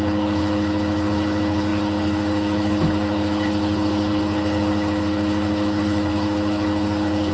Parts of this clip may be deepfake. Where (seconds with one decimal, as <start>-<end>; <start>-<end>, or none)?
0.0-7.3